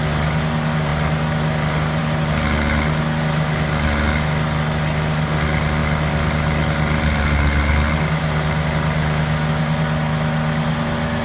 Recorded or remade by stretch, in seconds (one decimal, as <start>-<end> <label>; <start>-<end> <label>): 0.0-11.2 recorded